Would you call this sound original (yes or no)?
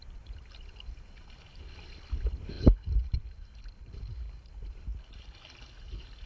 yes